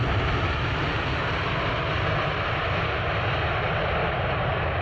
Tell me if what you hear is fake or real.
real